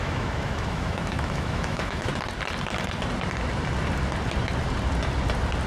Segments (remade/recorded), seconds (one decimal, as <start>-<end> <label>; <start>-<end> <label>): 0.0-2.1 remade; 2.1-5.7 recorded